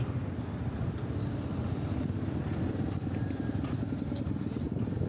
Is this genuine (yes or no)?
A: yes